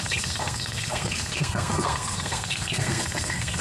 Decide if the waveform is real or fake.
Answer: fake